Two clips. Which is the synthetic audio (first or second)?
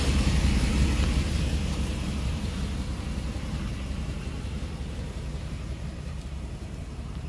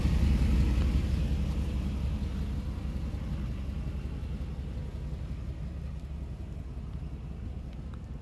first